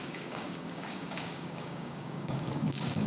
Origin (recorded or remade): remade